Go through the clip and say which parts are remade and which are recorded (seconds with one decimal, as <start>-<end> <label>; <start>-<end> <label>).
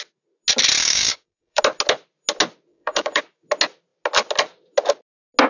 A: 0.0-0.8 recorded; 0.8-1.6 remade; 1.6-2.7 recorded; 2.7-3.2 remade; 3.2-5.5 recorded